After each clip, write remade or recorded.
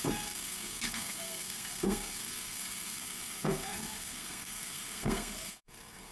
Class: remade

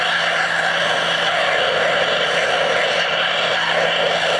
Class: recorded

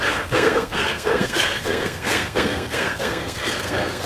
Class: remade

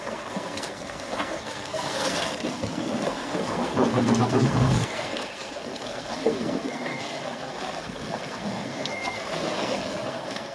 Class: remade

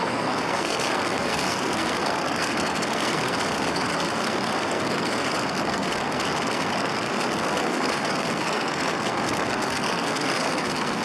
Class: remade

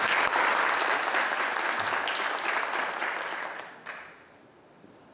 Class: recorded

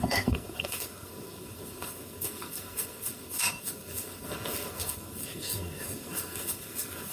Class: remade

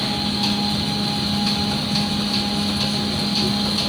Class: recorded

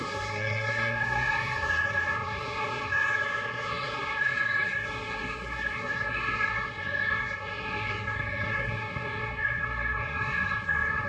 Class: remade